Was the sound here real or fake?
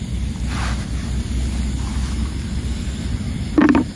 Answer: real